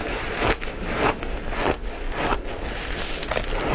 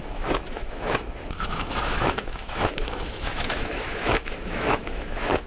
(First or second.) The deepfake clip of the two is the second